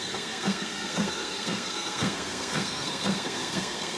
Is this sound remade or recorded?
remade